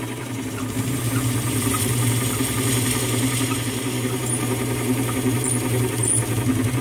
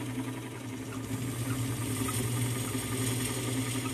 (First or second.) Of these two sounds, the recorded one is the second